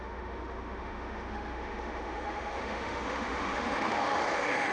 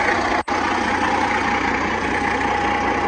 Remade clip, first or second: first